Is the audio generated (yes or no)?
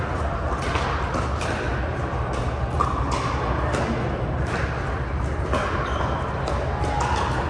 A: no